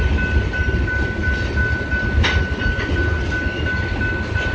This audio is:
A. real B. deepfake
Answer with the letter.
A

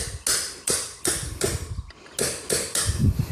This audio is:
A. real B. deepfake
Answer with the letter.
A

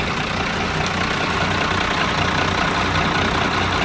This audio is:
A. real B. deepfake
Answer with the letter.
A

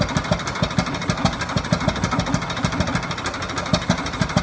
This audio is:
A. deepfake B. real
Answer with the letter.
B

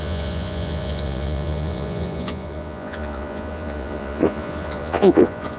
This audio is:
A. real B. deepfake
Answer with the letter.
B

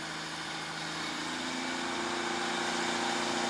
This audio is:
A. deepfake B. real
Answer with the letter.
B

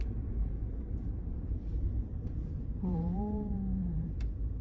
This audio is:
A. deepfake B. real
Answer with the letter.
A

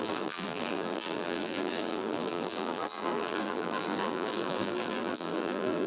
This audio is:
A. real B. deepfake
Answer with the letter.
B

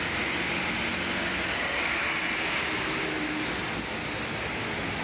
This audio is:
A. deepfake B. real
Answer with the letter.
B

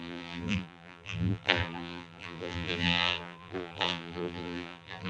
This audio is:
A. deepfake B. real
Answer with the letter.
A